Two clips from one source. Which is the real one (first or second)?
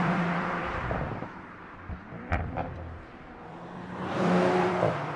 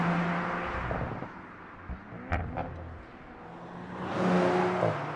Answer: second